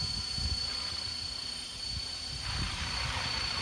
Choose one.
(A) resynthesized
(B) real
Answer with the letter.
A